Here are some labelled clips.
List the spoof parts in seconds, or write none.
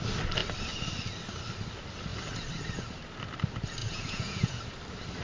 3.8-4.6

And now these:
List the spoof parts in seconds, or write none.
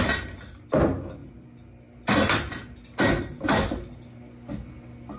none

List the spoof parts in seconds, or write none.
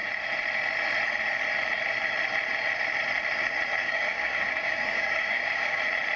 3.8-5.8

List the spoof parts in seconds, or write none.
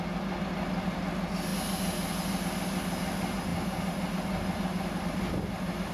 none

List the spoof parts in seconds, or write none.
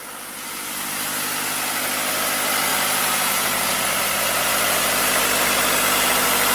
none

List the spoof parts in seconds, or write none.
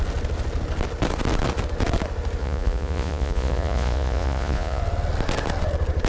2.4-4.8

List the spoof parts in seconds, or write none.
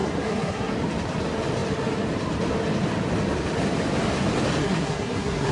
0.0-0.7; 4.6-5.5